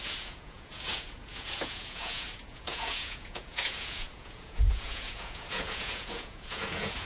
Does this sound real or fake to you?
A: fake